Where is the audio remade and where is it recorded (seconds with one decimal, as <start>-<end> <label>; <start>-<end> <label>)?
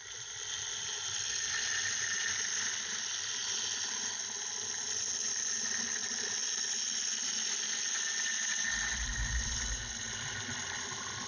0.0-11.3 recorded